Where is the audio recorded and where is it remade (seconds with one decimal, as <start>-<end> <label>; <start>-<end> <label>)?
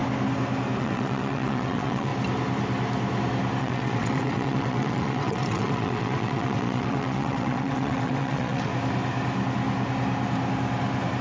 0.0-0.8 recorded; 0.8-2.1 remade; 2.1-3.6 recorded; 3.6-8.7 remade; 8.7-11.2 recorded